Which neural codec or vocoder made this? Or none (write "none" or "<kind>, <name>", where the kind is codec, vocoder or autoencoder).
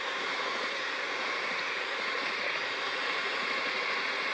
vocoder, Vocos